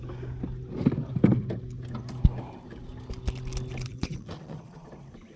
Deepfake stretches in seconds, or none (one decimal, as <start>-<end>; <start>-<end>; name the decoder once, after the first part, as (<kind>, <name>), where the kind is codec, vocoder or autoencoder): 3.9-4.9 (vocoder, Vocos)